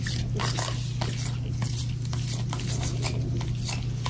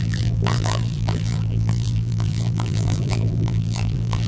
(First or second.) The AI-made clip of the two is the second